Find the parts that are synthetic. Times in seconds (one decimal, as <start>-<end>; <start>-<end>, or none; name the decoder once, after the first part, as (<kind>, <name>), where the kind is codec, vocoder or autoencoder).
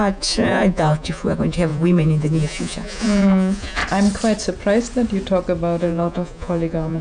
0.0-3.8 (vocoder, Vocos); 5.8-7.0